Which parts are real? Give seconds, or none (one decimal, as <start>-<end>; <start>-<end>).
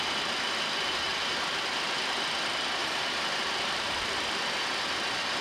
0.0-2.8; 4.6-5.4